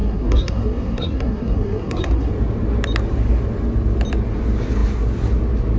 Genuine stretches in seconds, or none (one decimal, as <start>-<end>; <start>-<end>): 2.3-5.8

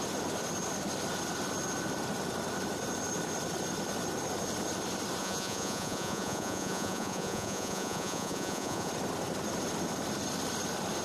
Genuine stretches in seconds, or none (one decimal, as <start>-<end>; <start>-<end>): 0.0-5.2; 8.9-11.0

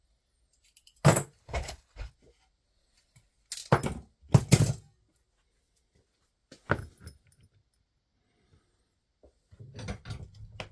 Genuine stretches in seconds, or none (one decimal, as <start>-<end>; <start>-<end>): 0.0-1.4; 2.1-10.7

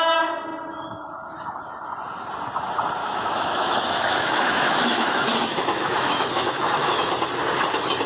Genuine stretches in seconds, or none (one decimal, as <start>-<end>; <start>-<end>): 0.0-3.0; 7.1-8.1

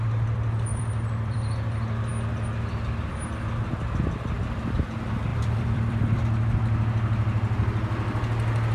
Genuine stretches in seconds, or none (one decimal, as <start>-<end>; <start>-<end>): 0.0-0.7; 1.5-5.3; 6.2-8.7